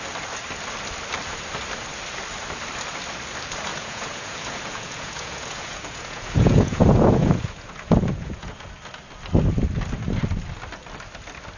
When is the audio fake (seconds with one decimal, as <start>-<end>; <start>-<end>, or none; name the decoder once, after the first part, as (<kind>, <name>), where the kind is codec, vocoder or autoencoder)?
3.7-8.7 (vocoder, Vocos)